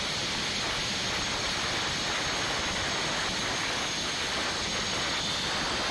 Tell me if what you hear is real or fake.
real